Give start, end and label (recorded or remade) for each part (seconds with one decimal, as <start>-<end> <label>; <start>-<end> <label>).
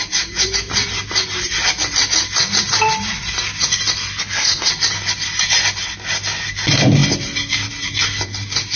0.0-4.2 recorded; 4.2-4.7 remade; 4.7-8.8 recorded